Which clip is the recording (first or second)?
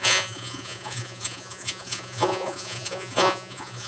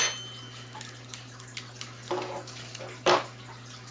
second